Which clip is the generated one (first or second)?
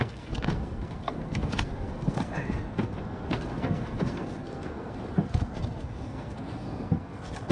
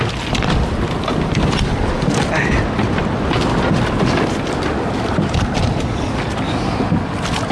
first